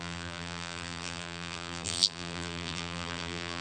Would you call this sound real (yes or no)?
no